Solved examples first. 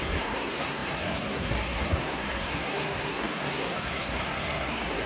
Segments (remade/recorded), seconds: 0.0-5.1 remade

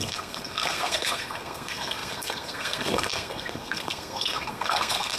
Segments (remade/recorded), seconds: 0.0-5.2 remade

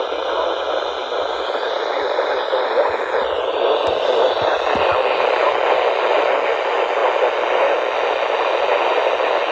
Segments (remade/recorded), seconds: 0.0-9.5 recorded

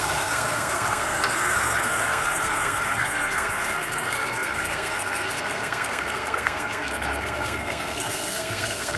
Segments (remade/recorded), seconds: 0.0-9.0 remade

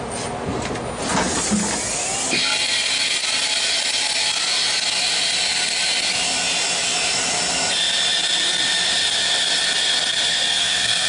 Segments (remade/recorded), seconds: 0.0-10.3 recorded; 10.3-11.1 remade

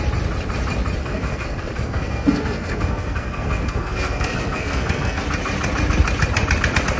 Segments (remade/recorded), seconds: 0.0-1.0 recorded; 1.0-5.2 remade; 5.2-7.0 recorded

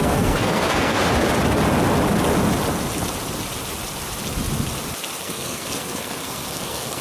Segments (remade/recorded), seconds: 0.0-1.0 remade; 1.0-5.2 recorded; 5.2-7.0 remade